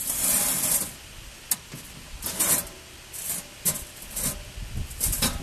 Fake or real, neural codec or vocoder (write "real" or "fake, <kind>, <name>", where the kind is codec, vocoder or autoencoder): real